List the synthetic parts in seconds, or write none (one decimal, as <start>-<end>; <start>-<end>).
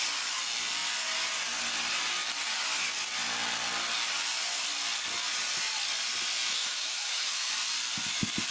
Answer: 6.5-7.5